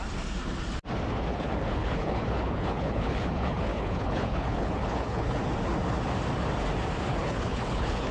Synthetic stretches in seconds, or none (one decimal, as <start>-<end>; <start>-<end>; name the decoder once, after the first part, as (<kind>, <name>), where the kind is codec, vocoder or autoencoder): 1.3-5.4 (codec, HILCodec); 7.1-8.1